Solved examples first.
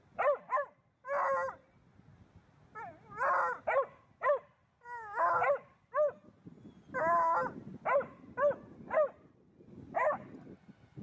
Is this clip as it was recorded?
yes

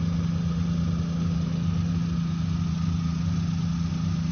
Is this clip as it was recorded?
yes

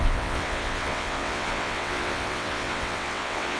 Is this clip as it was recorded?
no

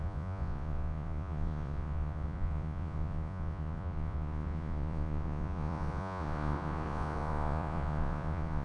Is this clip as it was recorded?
no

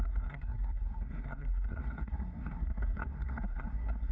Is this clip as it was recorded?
no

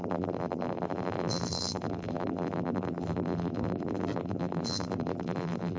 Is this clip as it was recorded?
no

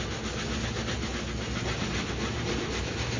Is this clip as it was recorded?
yes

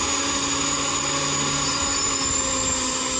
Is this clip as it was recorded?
yes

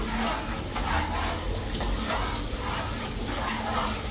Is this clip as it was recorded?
yes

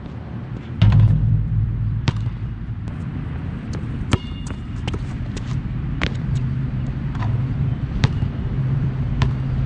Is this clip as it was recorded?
no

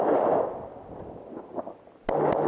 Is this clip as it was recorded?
yes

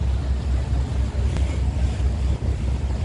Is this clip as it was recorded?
yes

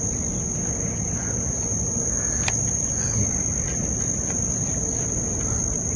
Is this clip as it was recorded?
yes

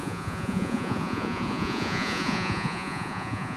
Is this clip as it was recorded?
no